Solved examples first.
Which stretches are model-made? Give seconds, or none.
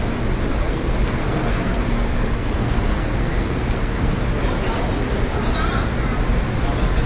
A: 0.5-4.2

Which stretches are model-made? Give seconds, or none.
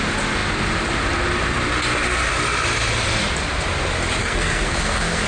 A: 4.2-5.3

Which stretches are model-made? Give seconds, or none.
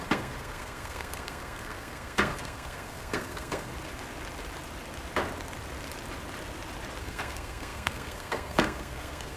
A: 0.0-3.7; 7.0-9.4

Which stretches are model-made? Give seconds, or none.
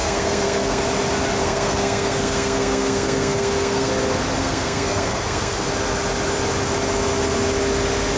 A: 0.0-0.8; 1.4-3.9; 4.4-5.7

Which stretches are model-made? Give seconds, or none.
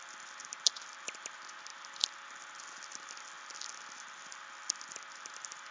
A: none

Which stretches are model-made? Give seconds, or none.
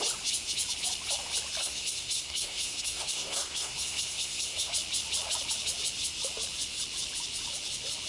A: 1.6-4.7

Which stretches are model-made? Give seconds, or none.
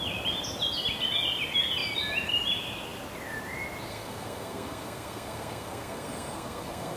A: 3.9-7.0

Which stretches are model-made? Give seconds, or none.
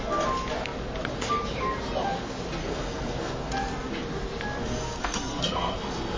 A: 2.6-3.5; 4.6-6.2